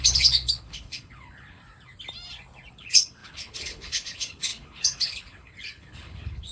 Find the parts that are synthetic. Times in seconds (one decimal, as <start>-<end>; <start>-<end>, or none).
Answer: 0.0-1.6; 2.7-6.5